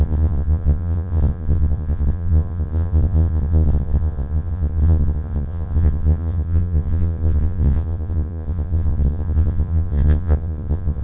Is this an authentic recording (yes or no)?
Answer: no